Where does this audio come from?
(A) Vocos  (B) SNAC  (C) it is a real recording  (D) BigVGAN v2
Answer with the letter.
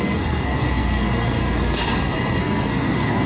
B